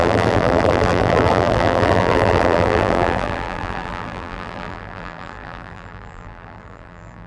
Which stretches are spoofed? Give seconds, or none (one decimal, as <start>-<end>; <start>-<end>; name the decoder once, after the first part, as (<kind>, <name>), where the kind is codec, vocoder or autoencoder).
0.0-7.3 (vocoder, BigVGAN v2)